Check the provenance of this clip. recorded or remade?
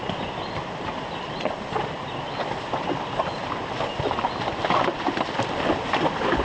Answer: recorded